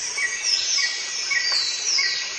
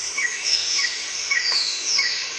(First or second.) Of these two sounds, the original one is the first